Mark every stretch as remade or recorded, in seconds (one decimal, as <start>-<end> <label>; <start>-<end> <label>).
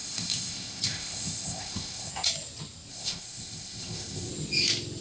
0.0-2.1 remade; 2.1-2.9 recorded; 2.9-4.3 remade; 4.3-5.0 recorded